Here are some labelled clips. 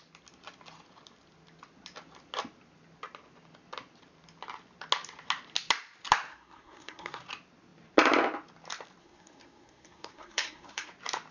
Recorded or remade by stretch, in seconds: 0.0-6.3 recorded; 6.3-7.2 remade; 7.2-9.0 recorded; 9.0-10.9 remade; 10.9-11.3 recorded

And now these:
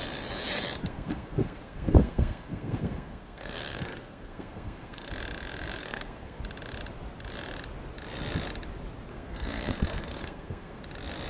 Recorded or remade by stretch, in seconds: 0.0-0.8 recorded; 0.8-5.1 remade; 5.1-5.8 recorded; 5.8-6.4 remade; 6.4-9.1 recorded; 9.1-10.8 remade; 10.8-11.3 recorded

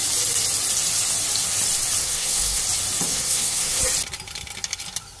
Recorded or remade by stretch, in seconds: 0.0-2.0 recorded; 2.0-2.6 remade; 2.6-3.1 recorded; 3.1-3.8 remade; 3.8-5.2 recorded

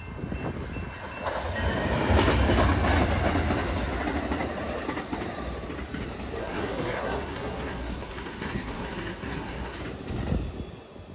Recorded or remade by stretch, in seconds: 0.0-6.4 recorded; 6.4-9.8 remade; 9.8-11.1 recorded